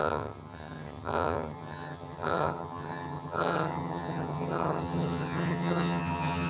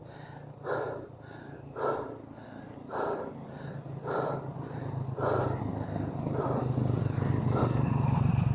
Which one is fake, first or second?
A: first